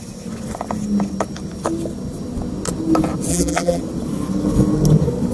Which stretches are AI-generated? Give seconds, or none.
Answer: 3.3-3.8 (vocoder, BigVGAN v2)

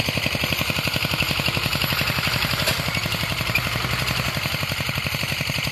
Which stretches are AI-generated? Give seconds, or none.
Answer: none